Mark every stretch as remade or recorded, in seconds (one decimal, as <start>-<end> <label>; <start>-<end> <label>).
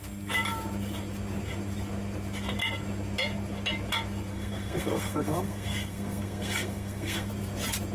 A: 0.0-4.3 recorded; 4.3-7.3 remade; 7.3-7.9 recorded